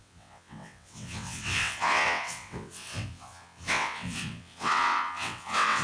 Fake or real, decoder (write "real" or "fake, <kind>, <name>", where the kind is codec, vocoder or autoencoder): fake, vocoder, WaveNeXt